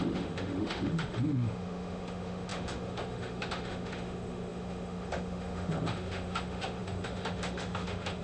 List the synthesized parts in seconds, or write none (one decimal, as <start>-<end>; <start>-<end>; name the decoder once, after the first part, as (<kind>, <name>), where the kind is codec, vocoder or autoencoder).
0.0-8.2 (autoencoder, DAC-VAE)